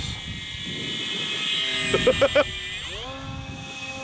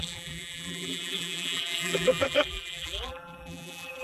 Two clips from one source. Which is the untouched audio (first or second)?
first